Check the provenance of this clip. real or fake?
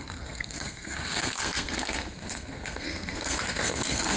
fake